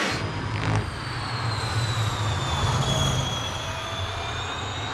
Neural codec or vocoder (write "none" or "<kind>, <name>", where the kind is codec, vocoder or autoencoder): none